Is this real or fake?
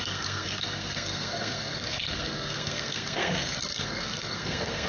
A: fake